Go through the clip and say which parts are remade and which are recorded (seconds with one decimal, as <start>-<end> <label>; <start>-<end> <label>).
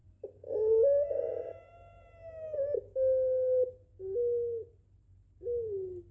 0.0-6.1 recorded